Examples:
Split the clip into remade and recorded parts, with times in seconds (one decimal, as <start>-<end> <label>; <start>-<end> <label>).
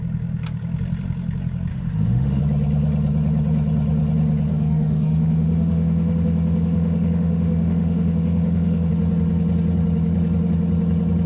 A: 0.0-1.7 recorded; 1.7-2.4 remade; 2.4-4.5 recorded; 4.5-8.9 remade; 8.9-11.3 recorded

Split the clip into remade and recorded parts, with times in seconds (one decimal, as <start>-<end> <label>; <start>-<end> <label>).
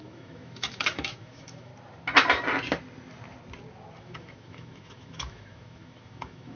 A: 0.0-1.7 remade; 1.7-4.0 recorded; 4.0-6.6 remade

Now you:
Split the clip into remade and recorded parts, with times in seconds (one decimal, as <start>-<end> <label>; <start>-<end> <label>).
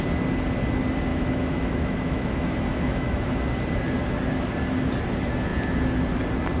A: 0.0-1.1 recorded; 1.1-3.4 remade; 3.4-6.6 recorded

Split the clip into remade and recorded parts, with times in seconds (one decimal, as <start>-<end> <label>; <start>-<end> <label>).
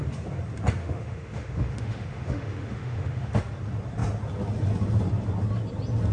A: 0.0-0.8 recorded; 0.8-3.4 remade; 3.4-6.1 recorded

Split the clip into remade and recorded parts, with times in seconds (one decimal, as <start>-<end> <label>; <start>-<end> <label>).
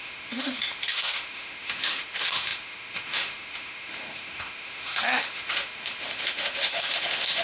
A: 0.0-7.4 remade